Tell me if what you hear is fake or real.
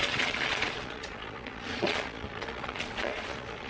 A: fake